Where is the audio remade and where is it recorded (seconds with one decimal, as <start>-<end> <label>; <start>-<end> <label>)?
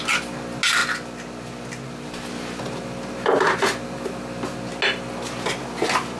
0.0-6.2 recorded